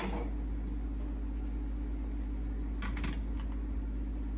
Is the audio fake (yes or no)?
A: no